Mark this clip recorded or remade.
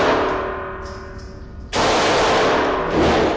recorded